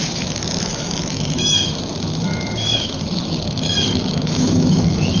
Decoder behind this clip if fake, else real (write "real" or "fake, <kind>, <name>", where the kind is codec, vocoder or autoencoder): fake, autoencoder, DAC-VAE